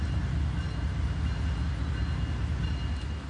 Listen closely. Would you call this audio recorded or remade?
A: recorded